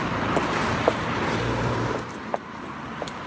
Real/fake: fake